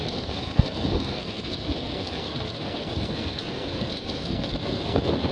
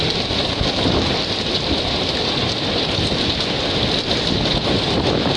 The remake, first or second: first